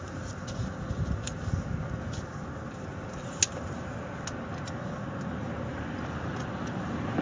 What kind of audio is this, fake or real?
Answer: real